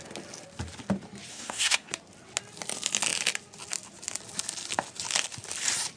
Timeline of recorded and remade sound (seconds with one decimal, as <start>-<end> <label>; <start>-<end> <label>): 0.0-1.3 recorded; 1.3-1.9 remade; 1.9-6.0 recorded